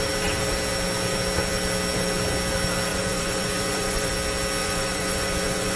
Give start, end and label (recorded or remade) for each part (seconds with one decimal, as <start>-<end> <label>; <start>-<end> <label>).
0.0-2.9 recorded; 2.9-4.1 remade; 4.1-4.6 recorded; 4.6-5.8 remade